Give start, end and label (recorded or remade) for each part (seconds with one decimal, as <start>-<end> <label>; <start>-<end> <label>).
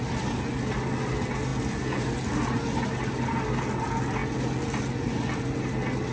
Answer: 0.0-6.1 recorded